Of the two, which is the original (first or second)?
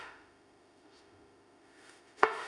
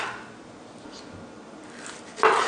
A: second